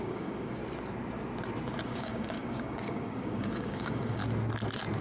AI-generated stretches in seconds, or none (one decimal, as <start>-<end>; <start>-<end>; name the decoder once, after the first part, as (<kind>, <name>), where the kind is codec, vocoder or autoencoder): 0.0-0.6 (codec, DAC); 1.8-4.2